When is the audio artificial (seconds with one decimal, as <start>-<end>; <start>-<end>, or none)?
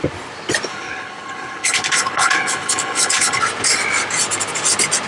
0.7-3.4